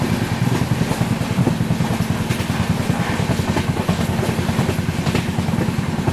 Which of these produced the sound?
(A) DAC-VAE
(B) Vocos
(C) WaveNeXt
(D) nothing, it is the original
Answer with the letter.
D